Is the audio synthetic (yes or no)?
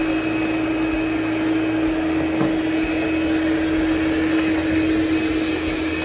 no